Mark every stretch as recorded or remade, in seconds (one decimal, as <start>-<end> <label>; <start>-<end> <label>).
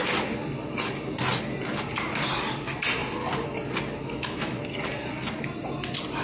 0.0-4.0 recorded; 4.0-4.6 remade; 4.6-6.2 recorded